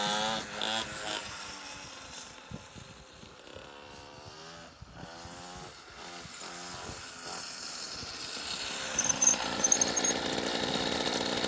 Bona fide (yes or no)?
yes